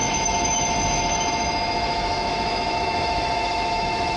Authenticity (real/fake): fake